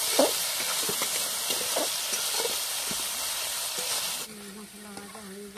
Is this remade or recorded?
recorded